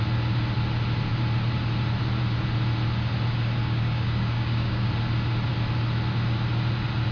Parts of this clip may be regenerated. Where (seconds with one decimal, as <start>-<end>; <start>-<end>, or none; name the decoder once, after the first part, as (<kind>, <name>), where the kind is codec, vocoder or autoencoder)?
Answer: 3.6-4.9 (codec, DAC)